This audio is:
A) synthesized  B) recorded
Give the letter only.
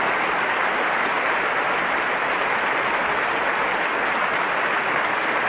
B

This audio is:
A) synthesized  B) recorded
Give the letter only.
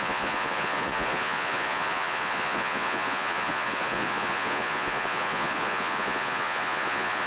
A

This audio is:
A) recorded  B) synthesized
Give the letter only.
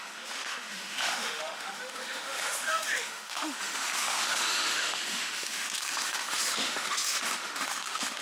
B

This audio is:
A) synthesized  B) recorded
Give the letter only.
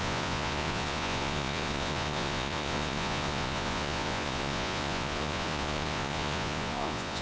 A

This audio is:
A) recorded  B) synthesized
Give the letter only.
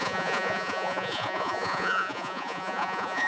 B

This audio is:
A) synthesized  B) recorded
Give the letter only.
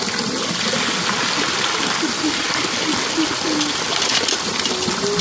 A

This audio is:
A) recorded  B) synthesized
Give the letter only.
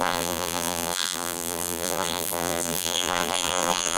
B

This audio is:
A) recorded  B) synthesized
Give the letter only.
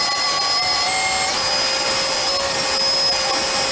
A